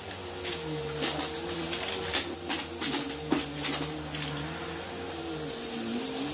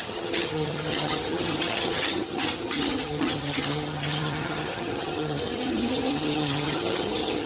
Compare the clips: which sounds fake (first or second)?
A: second